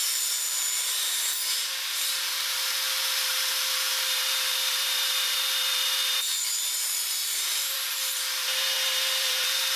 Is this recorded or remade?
remade